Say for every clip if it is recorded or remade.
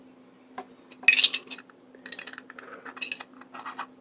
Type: recorded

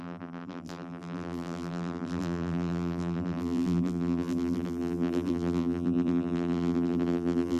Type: remade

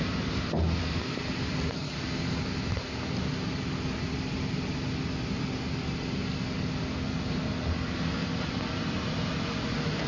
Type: recorded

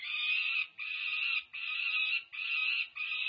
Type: recorded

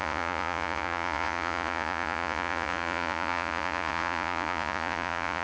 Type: remade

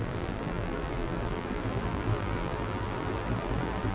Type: remade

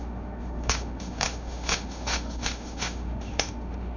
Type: remade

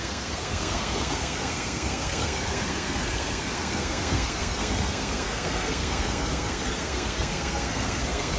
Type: remade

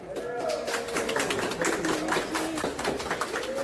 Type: recorded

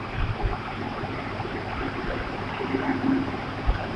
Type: recorded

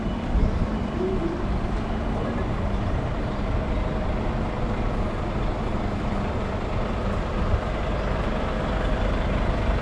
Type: recorded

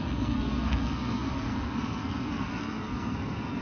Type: remade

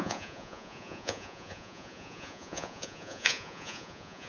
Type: remade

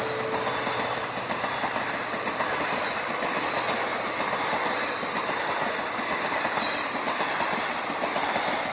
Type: recorded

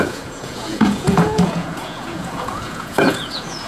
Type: remade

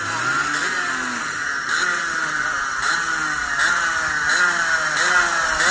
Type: recorded